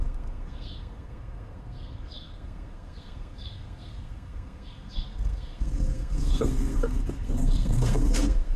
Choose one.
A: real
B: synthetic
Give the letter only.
B